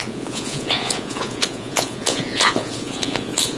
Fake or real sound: fake